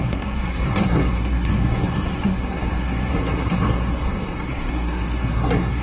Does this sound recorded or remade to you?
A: remade